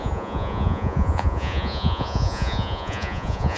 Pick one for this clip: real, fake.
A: fake